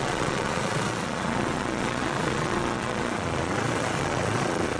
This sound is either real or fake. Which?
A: fake